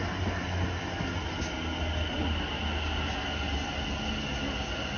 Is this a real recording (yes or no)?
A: yes